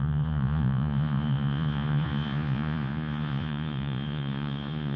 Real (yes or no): no